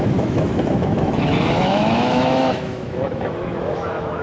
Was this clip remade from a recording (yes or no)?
yes